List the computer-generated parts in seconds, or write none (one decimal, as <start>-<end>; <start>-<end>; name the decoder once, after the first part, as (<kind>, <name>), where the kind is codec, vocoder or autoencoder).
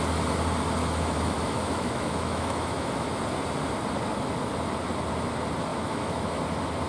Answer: 0.8-3.2 (autoencoder, DAC-VAE); 5.7-6.4